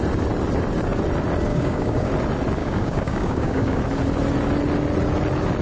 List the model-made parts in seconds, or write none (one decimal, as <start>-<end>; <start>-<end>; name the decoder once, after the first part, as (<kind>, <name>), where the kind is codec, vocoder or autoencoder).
1.5-2.1 (codec, DAC); 2.6-3.8